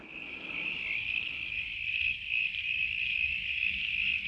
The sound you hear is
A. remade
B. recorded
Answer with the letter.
B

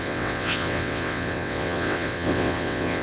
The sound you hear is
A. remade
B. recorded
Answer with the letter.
A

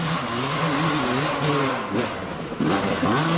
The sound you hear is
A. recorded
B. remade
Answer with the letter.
A